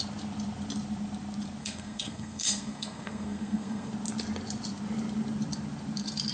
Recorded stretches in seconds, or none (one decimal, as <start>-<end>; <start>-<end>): 0.0-1.6; 3.9-6.3